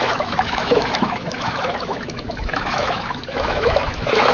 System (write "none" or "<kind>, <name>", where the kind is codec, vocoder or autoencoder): autoencoder, DAC-VAE